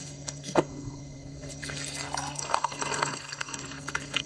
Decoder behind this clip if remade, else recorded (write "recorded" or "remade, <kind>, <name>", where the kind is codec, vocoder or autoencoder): remade, codec, SNAC